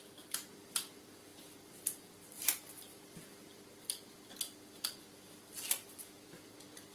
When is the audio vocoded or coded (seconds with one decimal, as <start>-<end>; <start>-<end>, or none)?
none